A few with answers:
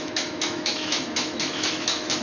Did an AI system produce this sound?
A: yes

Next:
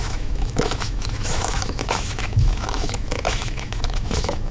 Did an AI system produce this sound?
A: yes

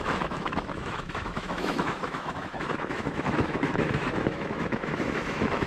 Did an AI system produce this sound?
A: yes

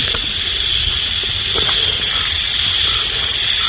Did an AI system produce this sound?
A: no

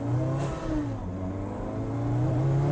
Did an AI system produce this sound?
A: no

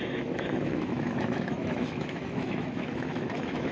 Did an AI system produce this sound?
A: yes